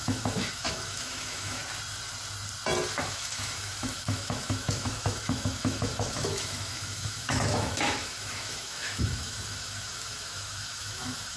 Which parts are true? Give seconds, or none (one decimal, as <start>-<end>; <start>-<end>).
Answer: 1.6-3.0